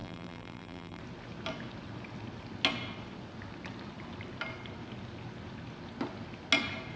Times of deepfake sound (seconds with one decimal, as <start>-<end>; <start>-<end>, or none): 0.0-1.0